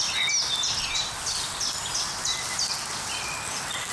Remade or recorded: recorded